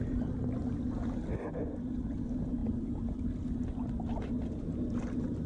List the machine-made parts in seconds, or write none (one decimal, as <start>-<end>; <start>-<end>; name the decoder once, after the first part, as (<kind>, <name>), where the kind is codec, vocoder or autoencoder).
none